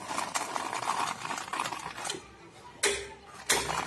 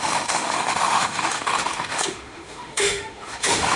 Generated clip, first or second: second